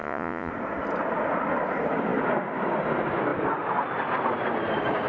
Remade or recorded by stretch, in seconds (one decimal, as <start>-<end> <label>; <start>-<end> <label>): 0.0-0.5 remade; 0.5-5.1 recorded